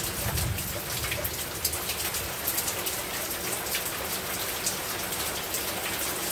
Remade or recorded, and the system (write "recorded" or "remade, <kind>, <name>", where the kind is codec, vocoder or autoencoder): recorded